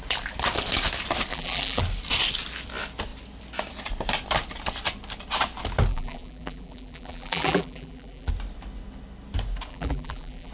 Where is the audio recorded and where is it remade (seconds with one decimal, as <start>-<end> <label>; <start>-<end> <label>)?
0.0-1.3 recorded; 1.3-1.8 remade; 1.8-5.9 recorded; 5.9-8.3 remade; 8.3-9.7 recorded; 9.7-10.5 remade